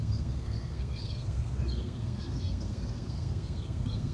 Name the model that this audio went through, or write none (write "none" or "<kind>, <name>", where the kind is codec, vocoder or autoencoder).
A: codec, SNAC